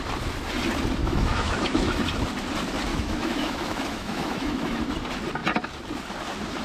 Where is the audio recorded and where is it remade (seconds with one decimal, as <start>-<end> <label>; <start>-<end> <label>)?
0.0-1.0 recorded; 1.0-2.0 remade; 2.0-2.9 recorded; 2.9-4.8 remade; 4.8-6.6 recorded